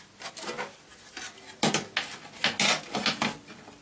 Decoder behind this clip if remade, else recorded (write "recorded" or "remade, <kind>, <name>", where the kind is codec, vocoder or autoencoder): recorded